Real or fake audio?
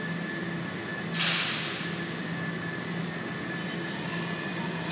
real